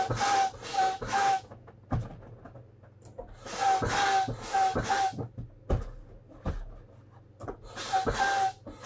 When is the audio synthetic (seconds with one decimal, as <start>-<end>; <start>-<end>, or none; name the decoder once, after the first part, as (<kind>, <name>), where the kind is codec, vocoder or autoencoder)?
0.7-1.7 (autoencoder, DAC-VAE)

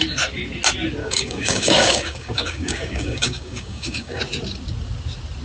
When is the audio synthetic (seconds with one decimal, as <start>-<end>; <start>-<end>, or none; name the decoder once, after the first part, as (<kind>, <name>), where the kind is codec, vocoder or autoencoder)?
1.0-4.2 (codec, DAC)

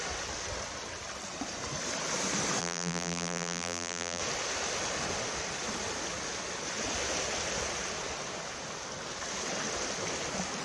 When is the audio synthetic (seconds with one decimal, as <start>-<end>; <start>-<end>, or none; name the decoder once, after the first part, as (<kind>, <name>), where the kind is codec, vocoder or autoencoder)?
2.6-4.2 (vocoder, BigVGAN v2)

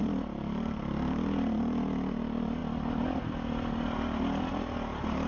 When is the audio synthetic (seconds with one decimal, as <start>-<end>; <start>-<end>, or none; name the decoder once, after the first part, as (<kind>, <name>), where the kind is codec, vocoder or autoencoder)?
none